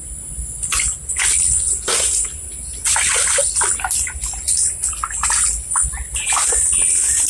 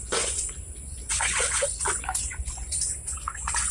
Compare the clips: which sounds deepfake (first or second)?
second